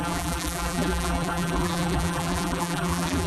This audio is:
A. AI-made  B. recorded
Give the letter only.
A